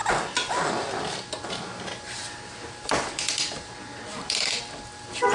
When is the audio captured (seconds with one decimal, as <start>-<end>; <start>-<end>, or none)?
0.0-5.3